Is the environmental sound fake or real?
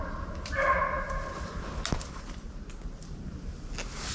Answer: real